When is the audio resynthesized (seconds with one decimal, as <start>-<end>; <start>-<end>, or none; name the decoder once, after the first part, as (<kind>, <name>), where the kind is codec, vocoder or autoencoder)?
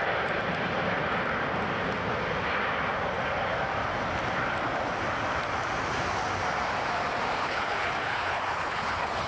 7.4-9.3 (codec, HILCodec)